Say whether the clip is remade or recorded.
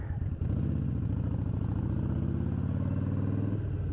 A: recorded